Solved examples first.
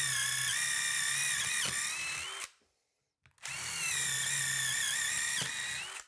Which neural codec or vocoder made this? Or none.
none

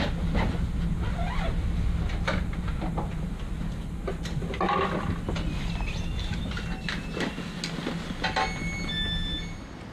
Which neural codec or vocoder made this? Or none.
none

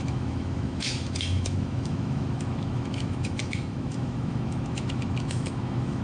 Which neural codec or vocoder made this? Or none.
autoencoder, DAC-VAE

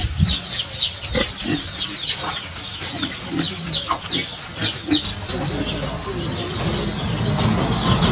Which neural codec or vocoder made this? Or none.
none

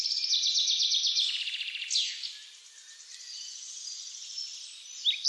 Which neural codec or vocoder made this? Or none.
none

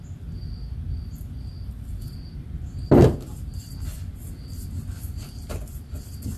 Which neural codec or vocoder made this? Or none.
none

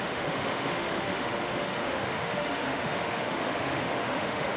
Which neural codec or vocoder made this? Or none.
autoencoder, DAC-VAE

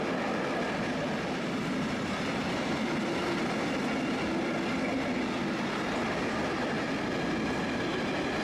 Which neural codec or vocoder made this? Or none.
none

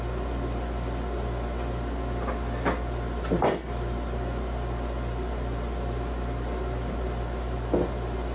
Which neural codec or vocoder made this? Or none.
none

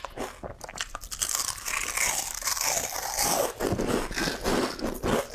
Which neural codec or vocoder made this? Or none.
none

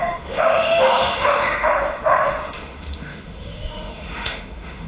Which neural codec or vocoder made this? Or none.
autoencoder, DAC-VAE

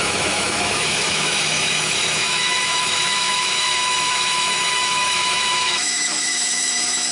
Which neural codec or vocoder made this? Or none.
autoencoder, DAC-VAE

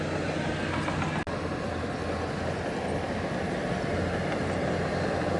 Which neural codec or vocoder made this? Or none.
none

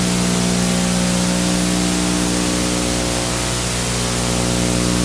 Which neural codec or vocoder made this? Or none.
none